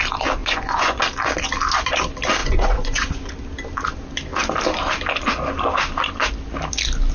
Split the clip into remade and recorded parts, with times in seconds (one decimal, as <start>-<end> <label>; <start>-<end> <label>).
0.0-0.4 recorded; 0.4-1.0 remade; 1.0-2.4 recorded; 2.4-3.3 remade; 3.3-7.1 recorded